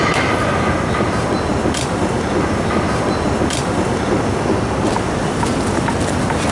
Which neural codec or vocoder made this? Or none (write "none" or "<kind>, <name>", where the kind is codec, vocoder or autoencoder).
none